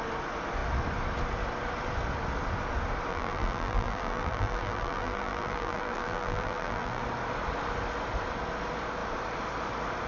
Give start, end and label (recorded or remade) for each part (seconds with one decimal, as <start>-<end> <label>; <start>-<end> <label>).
0.0-3.1 recorded; 3.1-7.0 remade; 7.0-10.1 recorded